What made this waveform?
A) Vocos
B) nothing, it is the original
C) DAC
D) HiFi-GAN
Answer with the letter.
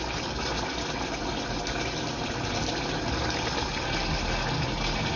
B